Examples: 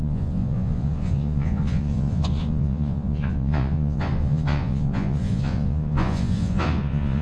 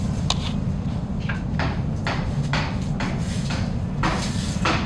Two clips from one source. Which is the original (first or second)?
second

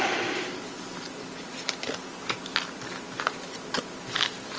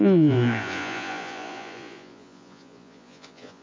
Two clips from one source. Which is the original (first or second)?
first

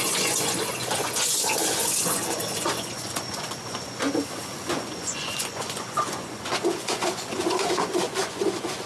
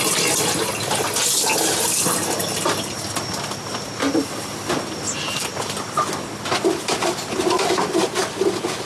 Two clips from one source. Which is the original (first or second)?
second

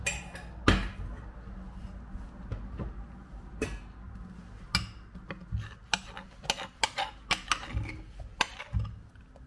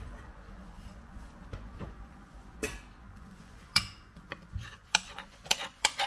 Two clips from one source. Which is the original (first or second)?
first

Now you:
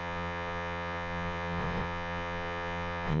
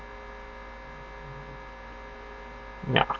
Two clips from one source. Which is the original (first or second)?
second